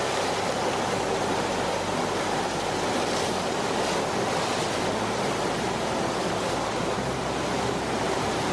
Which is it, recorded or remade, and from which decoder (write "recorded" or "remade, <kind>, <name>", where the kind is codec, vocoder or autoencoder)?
recorded